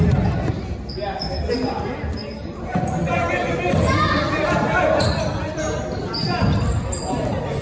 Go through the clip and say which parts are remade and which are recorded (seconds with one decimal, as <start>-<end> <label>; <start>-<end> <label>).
0.0-7.6 recorded